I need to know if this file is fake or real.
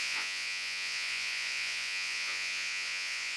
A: fake